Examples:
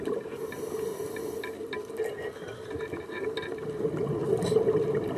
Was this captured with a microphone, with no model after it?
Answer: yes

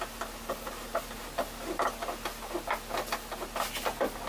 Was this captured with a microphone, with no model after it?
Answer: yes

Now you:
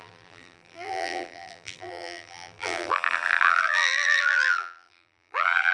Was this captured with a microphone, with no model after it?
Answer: no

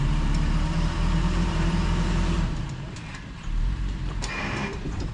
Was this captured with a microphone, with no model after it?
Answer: no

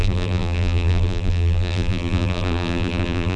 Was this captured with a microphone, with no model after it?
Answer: no